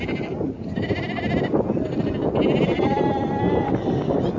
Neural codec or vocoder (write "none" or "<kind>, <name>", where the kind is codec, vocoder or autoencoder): none